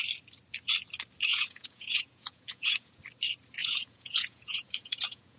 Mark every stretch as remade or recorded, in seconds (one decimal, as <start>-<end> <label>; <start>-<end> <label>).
0.0-1.3 recorded; 1.3-3.0 remade; 3.0-3.6 recorded; 3.6-5.4 remade